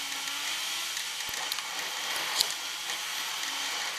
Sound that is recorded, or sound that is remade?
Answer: recorded